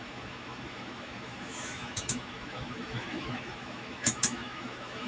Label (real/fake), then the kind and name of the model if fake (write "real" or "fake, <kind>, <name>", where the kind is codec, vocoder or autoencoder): fake, autoencoder, DAC-VAE